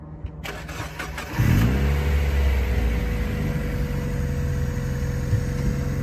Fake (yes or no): no